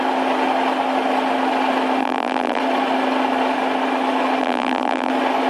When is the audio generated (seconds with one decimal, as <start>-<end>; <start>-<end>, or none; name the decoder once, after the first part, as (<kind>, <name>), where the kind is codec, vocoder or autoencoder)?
2.0-2.6 (vocoder, BigVGAN v2); 4.4-5.1